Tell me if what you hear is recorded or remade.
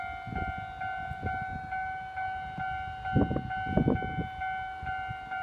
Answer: recorded